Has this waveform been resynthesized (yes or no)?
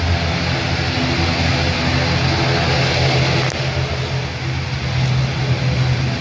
no